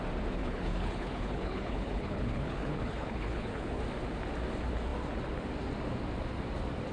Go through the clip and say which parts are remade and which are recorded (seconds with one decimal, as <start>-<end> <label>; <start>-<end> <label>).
0.0-0.4 recorded; 0.4-3.8 remade; 3.8-6.9 recorded

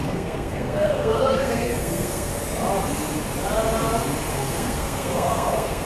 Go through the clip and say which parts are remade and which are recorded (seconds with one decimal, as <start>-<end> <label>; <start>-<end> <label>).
0.0-2.3 remade; 2.3-4.3 recorded; 4.3-5.8 remade

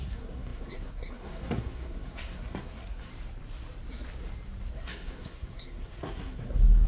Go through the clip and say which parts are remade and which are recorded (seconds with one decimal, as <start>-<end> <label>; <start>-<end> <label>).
0.0-3.1 remade; 3.1-4.7 recorded; 4.7-6.9 remade

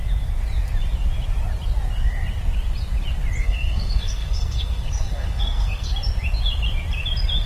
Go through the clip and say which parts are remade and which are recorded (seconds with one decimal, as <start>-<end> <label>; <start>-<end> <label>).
0.0-3.4 recorded; 3.4-5.9 remade; 5.9-7.5 recorded

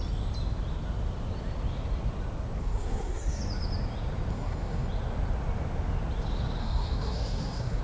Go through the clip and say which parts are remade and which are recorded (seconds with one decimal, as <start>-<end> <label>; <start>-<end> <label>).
0.0-2.6 recorded; 2.6-3.4 remade; 3.4-4.3 recorded; 4.3-4.9 remade; 4.9-6.6 recorded; 6.6-7.8 remade